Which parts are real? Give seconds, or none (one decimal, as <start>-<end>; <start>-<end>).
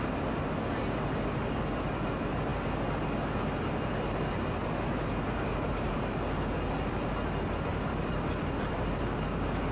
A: 0.0-7.7; 8.7-9.7